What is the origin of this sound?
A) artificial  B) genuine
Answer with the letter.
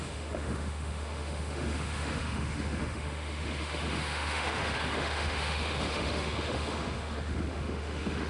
A